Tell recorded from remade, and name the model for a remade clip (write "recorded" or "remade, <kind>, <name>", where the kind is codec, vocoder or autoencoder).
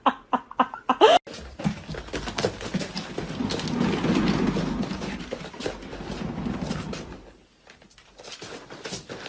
recorded